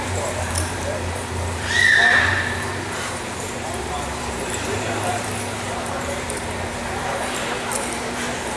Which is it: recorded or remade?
remade